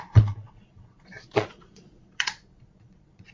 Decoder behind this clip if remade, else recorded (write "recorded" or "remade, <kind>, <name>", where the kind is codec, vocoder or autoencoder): remade, vocoder, Vocos